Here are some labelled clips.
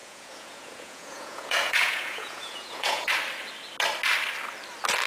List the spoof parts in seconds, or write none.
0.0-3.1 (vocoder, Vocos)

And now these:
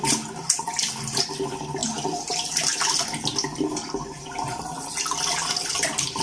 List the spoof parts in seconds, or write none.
none